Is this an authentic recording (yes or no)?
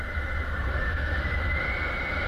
yes